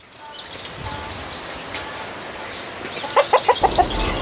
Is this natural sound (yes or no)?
yes